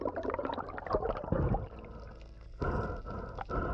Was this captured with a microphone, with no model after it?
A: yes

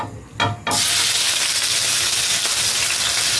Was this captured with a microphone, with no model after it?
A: yes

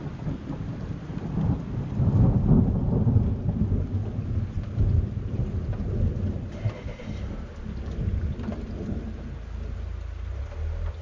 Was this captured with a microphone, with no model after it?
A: yes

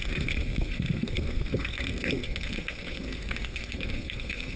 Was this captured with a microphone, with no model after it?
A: no